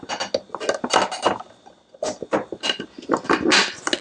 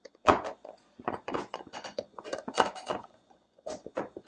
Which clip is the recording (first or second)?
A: first